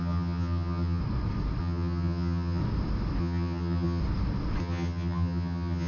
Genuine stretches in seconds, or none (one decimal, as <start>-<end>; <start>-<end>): 1.0-1.6; 2.6-3.2; 4.0-4.6